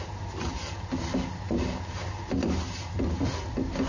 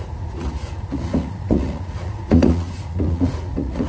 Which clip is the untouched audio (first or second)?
first